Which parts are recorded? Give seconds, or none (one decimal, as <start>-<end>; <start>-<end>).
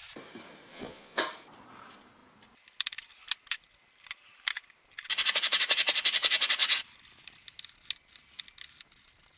0.0-0.7; 1.2-9.4